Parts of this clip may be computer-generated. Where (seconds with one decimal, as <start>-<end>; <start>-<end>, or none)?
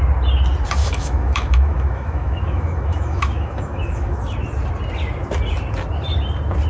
0.8-4.2